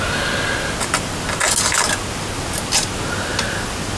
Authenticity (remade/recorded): recorded